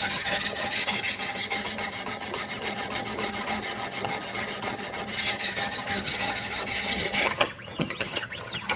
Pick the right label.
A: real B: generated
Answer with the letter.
B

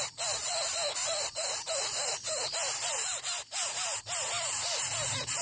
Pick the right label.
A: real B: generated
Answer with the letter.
A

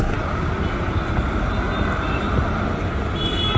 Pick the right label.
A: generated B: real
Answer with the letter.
B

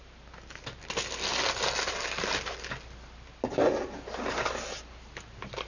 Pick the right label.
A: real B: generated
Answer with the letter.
A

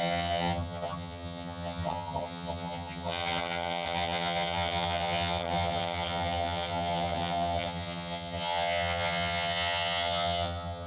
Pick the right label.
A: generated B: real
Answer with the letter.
A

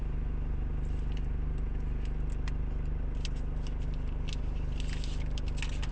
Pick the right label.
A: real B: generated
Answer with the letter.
A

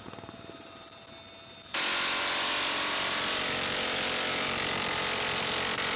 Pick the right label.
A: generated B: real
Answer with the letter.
B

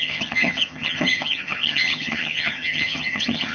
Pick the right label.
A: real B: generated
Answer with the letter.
B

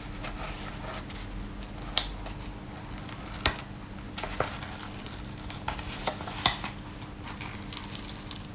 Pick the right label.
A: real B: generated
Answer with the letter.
A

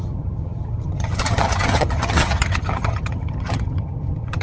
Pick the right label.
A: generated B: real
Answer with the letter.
A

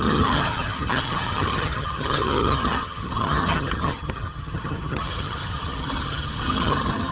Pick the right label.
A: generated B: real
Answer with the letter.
A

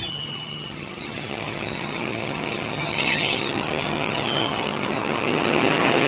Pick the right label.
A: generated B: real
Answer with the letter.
A